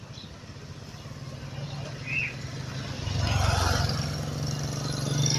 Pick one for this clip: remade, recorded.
recorded